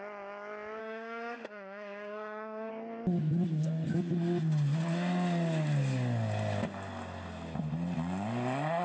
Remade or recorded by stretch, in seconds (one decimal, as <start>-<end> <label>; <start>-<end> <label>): 0.0-0.8 recorded; 0.8-2.7 remade; 2.7-8.8 recorded

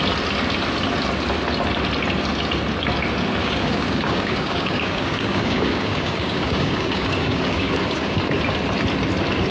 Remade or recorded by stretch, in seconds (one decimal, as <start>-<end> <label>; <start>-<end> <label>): 0.0-3.4 recorded; 3.4-8.2 remade; 8.2-9.5 recorded